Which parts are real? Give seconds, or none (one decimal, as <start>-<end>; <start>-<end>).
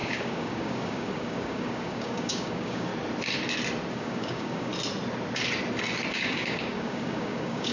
2.9-3.9; 4.7-6.1